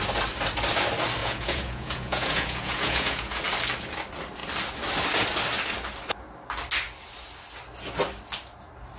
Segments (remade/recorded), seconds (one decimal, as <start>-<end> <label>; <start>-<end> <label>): 0.0-1.2 recorded; 1.2-3.4 remade; 3.4-9.0 recorded